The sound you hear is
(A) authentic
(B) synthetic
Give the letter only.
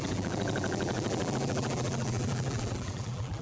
B